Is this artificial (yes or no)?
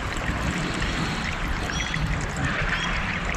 yes